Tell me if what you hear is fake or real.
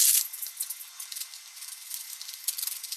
real